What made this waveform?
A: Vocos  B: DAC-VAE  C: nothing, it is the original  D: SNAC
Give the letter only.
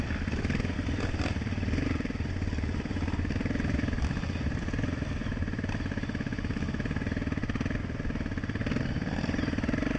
C